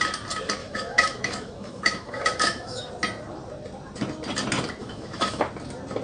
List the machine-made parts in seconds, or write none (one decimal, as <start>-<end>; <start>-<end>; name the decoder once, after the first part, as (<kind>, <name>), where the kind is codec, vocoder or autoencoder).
0.6-2.9 (autoencoder, DAC-VAE); 4.8-5.4